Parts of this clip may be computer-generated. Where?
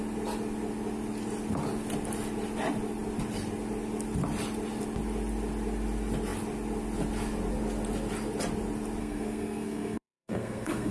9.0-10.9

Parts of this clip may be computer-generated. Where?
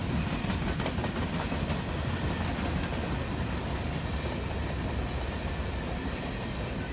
none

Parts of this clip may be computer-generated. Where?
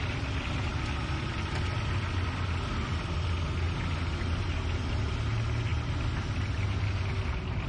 none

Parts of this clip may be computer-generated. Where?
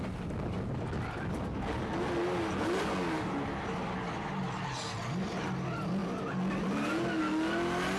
none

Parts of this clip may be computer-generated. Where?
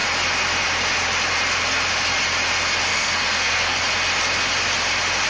2.9-3.8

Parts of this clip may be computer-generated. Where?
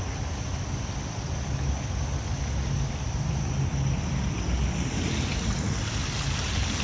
none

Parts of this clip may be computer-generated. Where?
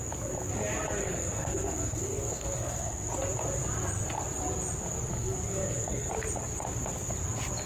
1.0-3.1; 5.1-6.1